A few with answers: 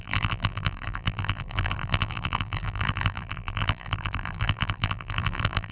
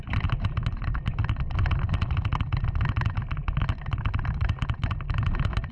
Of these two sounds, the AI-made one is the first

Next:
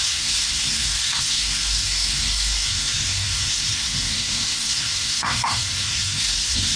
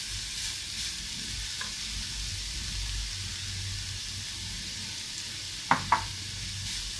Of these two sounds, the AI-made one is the first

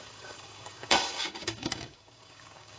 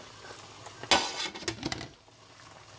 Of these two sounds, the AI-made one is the first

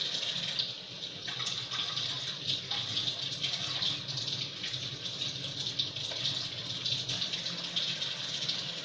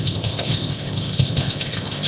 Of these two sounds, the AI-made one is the second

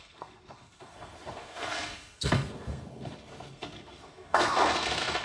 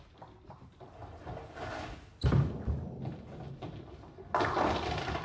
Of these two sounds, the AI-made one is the first